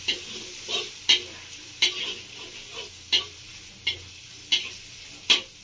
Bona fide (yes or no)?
yes